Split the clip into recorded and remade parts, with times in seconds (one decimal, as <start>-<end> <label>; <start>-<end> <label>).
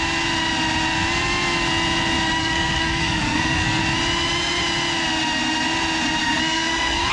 0.0-2.4 recorded; 2.4-3.8 remade; 3.8-6.2 recorded; 6.2-7.1 remade